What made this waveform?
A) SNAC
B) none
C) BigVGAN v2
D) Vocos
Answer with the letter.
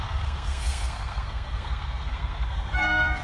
A